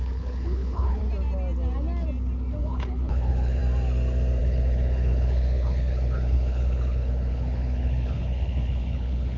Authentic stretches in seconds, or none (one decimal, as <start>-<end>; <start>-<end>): 1.0-2.6; 3.6-4.4